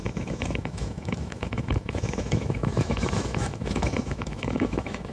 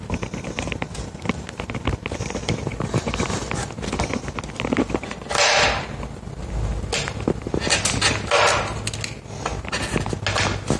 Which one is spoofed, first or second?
first